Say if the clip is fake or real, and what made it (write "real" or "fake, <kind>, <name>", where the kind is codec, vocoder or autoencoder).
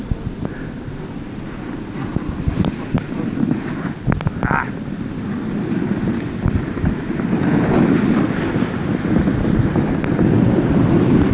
real